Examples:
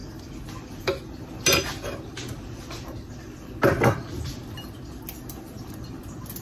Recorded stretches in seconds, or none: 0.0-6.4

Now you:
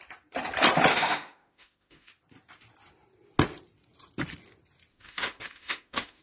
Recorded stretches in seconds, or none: 0.0-0.9; 2.1-4.9

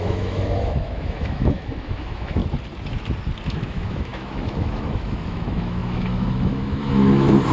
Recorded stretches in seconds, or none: 2.4-3.5

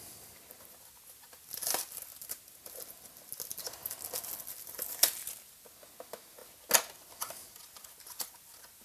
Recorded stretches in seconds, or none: 0.0-8.8

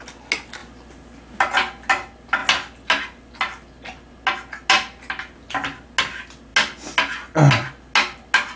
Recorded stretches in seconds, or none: 0.0-8.6

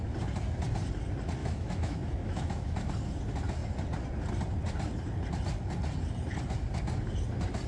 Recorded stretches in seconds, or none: 0.0-1.4; 2.9-7.7